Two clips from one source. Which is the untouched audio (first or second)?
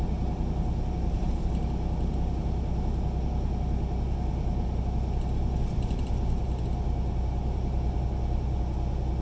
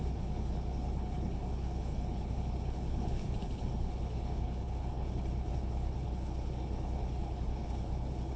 first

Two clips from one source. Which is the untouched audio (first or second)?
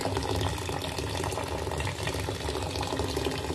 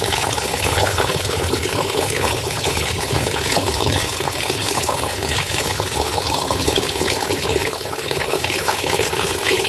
first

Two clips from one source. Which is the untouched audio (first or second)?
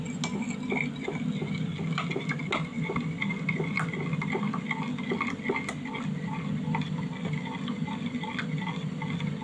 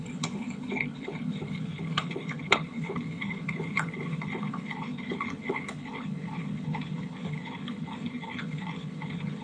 first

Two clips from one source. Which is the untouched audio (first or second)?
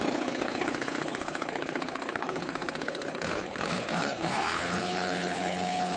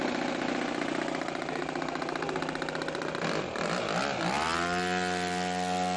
second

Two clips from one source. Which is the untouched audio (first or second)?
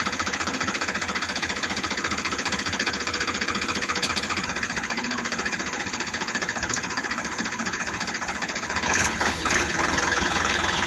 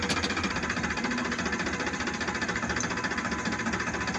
second